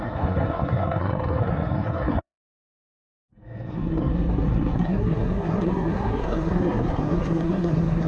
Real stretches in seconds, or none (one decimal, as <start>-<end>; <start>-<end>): none